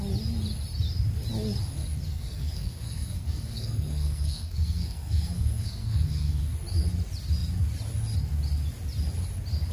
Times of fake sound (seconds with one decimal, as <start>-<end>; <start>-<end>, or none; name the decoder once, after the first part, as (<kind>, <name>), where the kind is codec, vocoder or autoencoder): 2.1-6.4 (codec, SNAC)